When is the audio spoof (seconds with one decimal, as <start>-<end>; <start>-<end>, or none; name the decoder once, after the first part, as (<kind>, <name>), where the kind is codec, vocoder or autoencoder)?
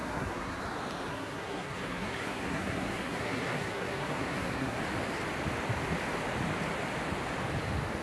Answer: 0.0-0.6 (codec, SNAC); 1.1-4.8